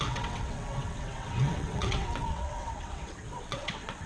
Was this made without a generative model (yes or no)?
no